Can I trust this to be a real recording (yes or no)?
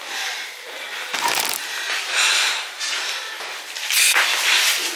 yes